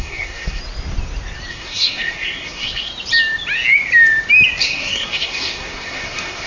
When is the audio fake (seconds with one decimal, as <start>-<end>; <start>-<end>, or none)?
0.0-0.6; 1.5-2.9; 4.6-6.5